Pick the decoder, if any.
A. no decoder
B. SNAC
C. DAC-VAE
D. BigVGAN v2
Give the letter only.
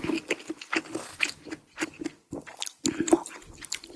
A